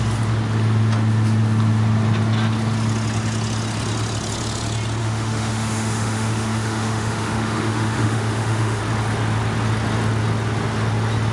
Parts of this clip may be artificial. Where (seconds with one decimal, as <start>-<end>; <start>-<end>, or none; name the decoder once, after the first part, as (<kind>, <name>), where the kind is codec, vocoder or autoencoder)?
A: 5.0-8.8 (autoencoder, DAC-VAE)